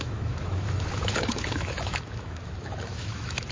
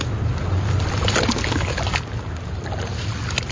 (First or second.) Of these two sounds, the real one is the second